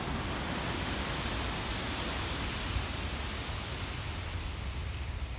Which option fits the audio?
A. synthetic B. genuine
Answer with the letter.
B